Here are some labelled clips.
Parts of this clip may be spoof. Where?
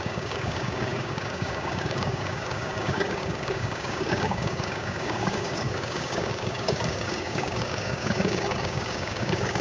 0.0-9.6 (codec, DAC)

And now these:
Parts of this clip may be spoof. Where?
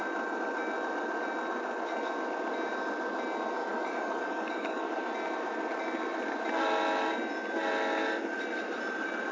3.7-5.0 (codec, DAC)